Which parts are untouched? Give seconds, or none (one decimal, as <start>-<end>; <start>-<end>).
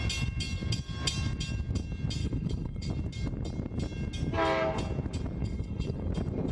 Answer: 0.0-2.2; 2.9-5.4; 6.1-6.5